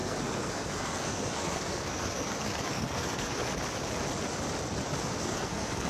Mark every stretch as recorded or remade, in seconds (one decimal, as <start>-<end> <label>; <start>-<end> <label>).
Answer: 0.0-3.5 remade; 3.5-5.1 recorded; 5.1-5.9 remade